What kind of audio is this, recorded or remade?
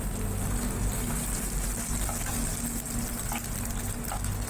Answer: recorded